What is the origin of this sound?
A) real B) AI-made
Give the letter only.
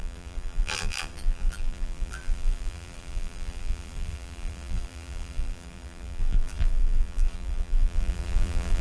B